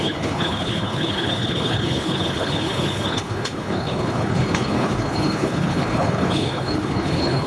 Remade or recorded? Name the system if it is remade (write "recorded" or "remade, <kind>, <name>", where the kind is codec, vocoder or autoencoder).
remade, codec, HILCodec